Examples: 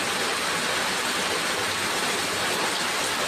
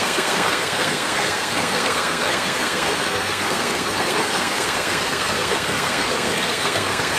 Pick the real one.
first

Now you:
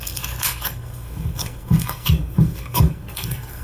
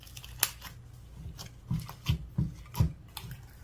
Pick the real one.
second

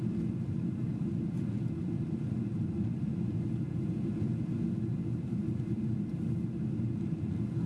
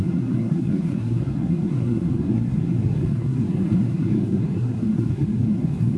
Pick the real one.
first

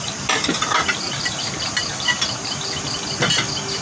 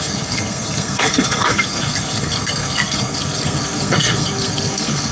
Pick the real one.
first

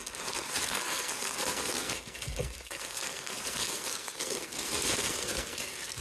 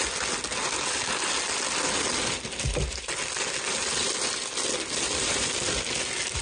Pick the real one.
second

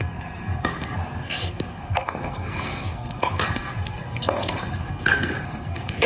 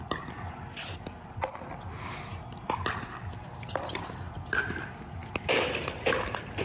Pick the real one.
second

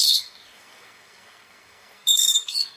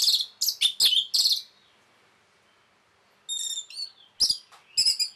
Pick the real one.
second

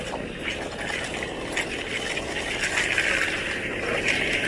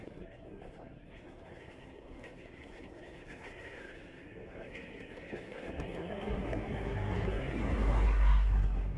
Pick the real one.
first